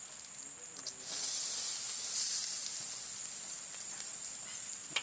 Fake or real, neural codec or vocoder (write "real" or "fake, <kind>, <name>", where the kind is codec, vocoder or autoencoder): real